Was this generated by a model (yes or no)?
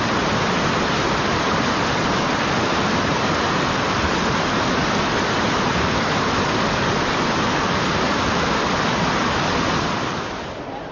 no